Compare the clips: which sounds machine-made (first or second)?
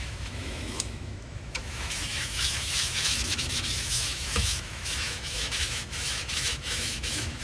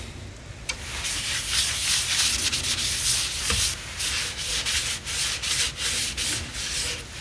first